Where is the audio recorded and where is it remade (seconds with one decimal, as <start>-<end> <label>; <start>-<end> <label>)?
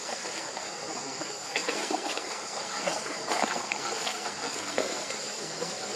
0.0-6.0 remade